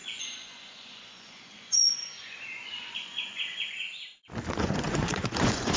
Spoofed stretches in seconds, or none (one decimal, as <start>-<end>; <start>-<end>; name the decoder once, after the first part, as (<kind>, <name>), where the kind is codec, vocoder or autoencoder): 0.0-3.9 (vocoder, Vocos); 4.6-5.8